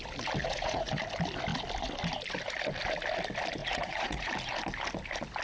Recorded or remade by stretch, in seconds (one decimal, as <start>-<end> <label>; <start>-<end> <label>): 0.0-0.4 recorded; 0.4-1.0 remade; 1.0-3.6 recorded; 3.6-4.3 remade; 4.3-5.4 recorded